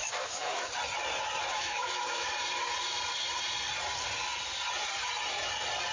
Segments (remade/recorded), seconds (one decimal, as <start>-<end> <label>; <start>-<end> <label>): 0.0-0.7 remade; 0.7-1.5 recorded; 1.5-2.3 remade; 2.3-5.9 recorded